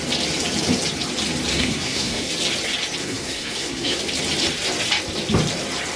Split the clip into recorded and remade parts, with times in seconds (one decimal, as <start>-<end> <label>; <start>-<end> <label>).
0.0-1.5 recorded; 1.5-2.3 remade; 2.3-3.0 recorded; 3.0-4.0 remade; 4.0-6.0 recorded